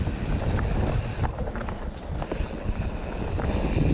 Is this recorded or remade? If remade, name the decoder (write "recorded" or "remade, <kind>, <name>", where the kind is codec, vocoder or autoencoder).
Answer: recorded